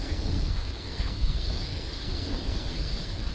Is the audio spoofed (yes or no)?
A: yes